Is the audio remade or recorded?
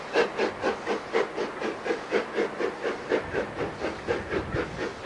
recorded